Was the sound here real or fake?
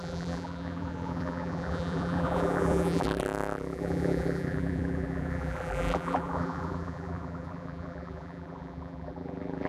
fake